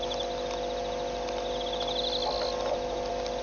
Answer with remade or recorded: recorded